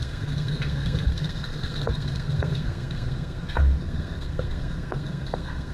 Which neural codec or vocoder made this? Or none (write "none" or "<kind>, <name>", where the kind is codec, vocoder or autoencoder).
codec, SNAC